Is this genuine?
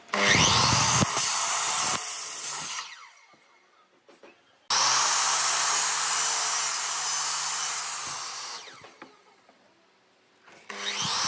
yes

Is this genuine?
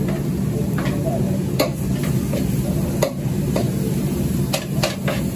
yes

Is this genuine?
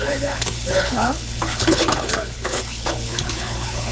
no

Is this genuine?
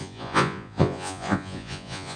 no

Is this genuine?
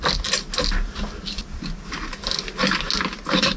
yes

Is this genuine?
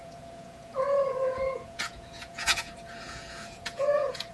no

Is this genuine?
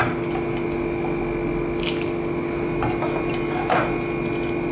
yes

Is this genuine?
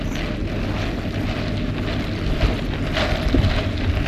yes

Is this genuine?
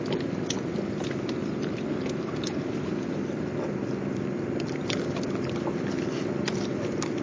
yes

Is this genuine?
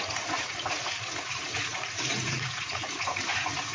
no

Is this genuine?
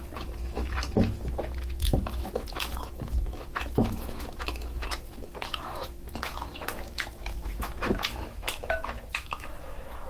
no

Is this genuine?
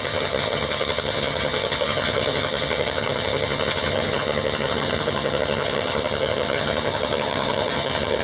no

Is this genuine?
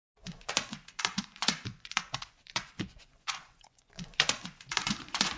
no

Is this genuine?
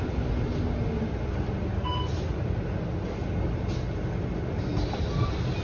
yes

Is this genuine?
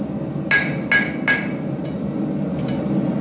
yes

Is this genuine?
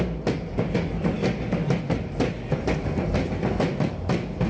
yes